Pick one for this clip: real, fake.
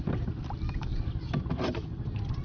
real